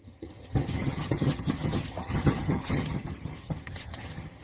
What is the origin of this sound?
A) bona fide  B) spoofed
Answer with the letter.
B